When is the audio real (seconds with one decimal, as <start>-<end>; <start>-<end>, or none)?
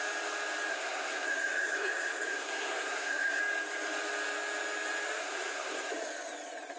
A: 0.0-0.7; 3.4-5.2; 5.9-6.8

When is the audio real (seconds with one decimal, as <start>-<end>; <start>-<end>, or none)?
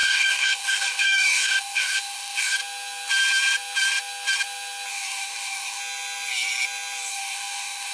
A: 2.6-4.9; 5.8-7.1